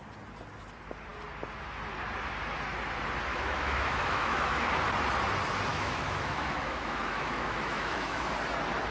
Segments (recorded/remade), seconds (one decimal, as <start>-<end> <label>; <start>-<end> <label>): 0.0-3.3 recorded; 3.3-4.7 remade; 4.7-5.7 recorded; 5.7-8.3 remade; 8.3-8.9 recorded